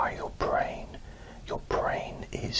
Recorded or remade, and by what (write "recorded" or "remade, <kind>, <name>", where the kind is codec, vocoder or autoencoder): remade, vocoder, BigVGAN v2